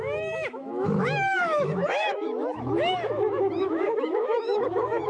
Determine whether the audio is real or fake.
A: fake